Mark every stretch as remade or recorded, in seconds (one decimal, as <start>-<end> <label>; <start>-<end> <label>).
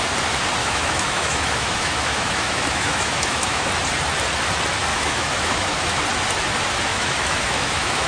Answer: 0.0-0.6 recorded; 0.6-3.7 remade; 3.7-4.9 recorded; 4.9-6.0 remade; 6.0-6.9 recorded; 6.9-8.1 remade